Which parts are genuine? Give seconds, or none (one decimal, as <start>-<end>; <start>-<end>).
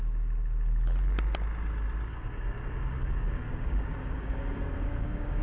0.0-2.1